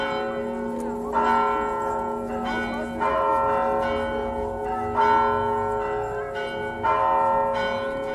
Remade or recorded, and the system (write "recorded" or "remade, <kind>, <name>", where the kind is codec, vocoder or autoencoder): recorded